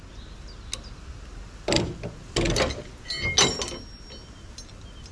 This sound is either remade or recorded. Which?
recorded